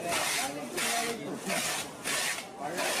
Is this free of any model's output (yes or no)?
yes